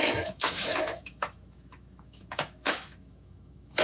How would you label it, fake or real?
fake